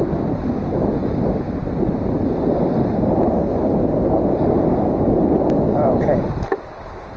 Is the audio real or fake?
real